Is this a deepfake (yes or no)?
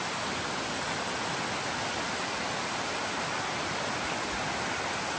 no